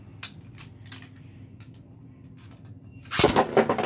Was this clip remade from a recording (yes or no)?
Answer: no